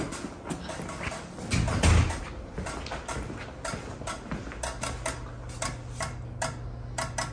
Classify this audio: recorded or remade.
recorded